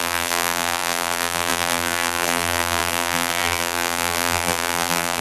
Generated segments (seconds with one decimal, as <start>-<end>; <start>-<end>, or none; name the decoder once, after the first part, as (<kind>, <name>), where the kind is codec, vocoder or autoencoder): 0.0-5.2 (vocoder, BigVGAN v2)